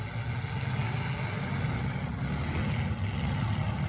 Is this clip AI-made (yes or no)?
no